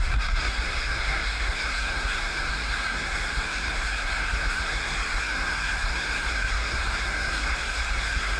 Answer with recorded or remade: remade